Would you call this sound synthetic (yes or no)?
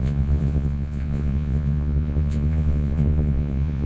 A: yes